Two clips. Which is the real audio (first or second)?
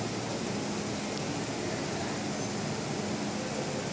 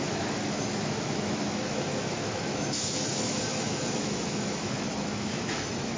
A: first